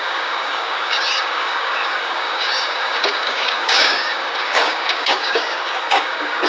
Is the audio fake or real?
fake